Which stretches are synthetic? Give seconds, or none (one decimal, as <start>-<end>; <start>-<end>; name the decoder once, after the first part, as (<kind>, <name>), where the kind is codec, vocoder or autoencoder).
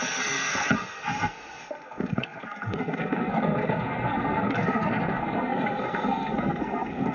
0.0-7.1 (codec, SNAC)